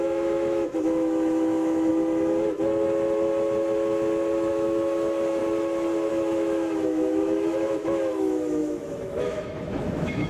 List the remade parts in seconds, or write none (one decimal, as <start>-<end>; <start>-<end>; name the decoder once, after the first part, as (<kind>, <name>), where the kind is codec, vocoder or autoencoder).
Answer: 0.0-1.9 (autoencoder, DAC-VAE); 4.5-5.4; 6.1-10.3